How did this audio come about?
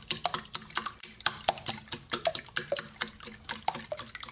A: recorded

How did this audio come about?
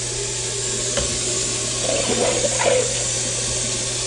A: recorded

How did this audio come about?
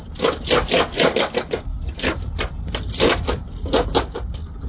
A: recorded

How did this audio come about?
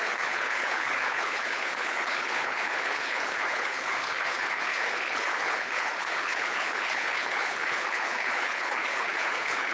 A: remade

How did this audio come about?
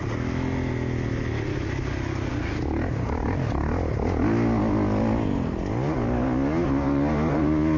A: recorded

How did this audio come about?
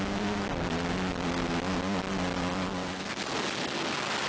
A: recorded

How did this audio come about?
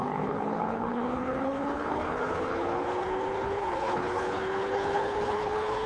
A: remade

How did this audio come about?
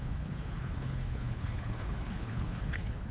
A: remade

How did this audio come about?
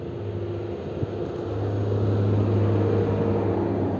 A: recorded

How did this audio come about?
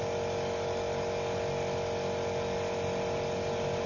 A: recorded